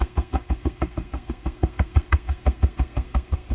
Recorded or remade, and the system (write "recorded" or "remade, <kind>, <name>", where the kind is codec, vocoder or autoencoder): remade, codec, SNAC